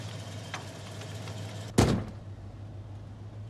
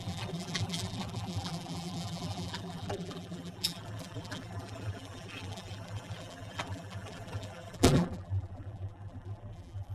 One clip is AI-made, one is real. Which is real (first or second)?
first